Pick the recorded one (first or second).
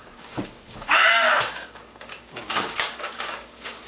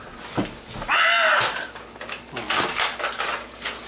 second